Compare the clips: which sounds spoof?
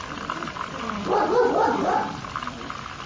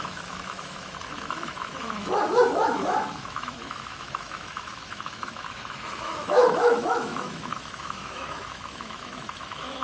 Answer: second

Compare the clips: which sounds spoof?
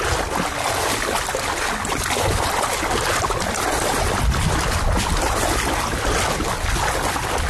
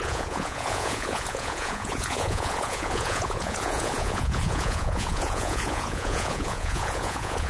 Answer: second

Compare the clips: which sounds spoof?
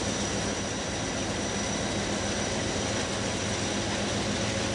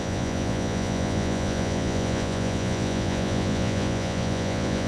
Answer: second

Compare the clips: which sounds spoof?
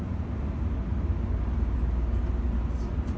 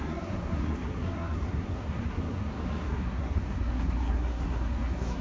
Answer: second